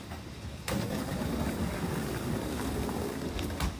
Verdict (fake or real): fake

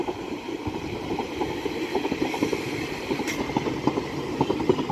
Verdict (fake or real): fake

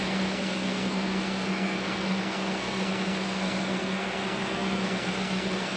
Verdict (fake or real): fake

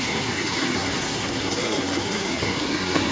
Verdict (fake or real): fake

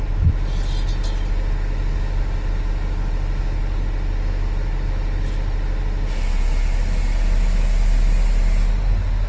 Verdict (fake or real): real